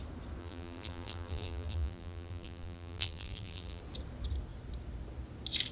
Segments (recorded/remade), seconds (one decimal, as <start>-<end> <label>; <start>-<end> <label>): 0.0-0.4 recorded; 0.4-3.8 remade; 3.8-5.7 recorded